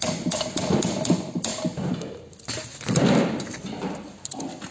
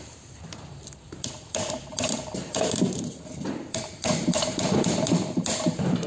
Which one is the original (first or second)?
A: first